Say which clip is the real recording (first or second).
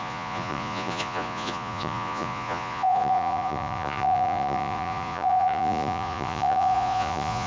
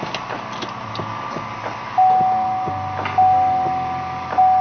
second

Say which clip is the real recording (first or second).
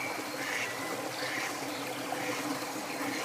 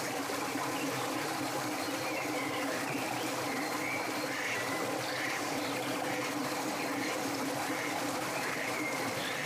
first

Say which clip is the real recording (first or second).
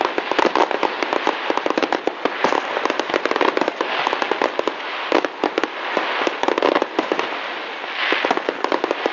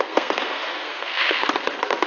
first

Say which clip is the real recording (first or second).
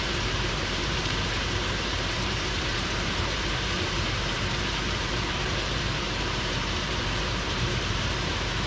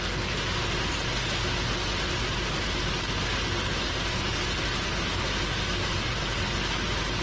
second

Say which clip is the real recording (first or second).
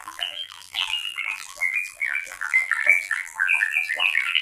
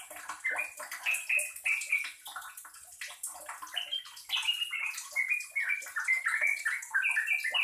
second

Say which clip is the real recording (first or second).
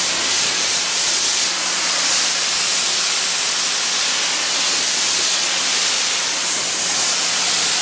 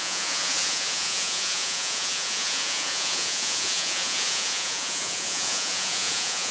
first